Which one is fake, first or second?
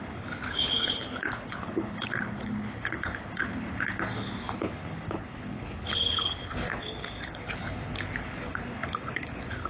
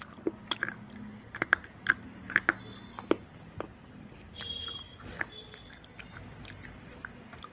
first